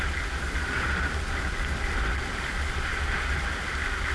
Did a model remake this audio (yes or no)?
no